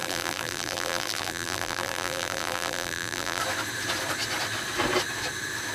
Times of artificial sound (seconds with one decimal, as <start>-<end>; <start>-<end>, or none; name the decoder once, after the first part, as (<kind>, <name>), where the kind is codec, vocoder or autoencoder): 0.0-3.4 (vocoder, BigVGAN v2)